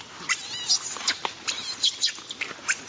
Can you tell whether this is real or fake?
real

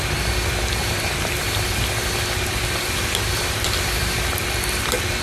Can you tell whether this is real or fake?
fake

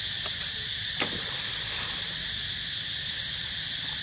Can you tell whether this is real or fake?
real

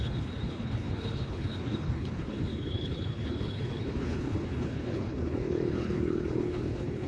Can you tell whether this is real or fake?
fake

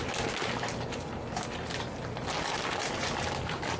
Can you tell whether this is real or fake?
real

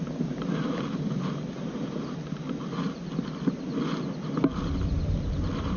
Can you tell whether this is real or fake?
real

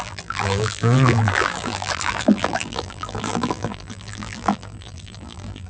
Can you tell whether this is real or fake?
fake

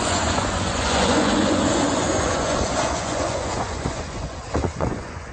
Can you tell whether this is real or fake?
fake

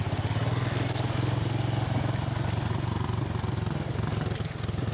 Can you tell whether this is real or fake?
real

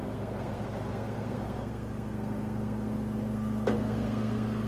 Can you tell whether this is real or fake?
fake